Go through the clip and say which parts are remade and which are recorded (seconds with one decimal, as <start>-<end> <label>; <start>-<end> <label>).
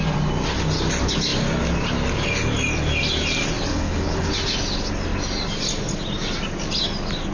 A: 0.0-3.7 recorded; 3.7-4.3 remade; 4.3-7.3 recorded